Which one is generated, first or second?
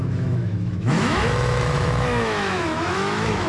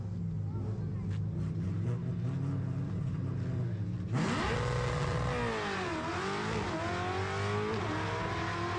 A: first